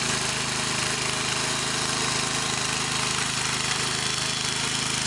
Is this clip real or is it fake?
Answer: real